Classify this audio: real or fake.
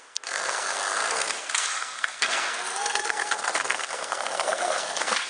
fake